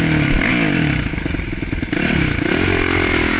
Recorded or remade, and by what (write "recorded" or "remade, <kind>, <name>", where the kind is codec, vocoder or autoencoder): recorded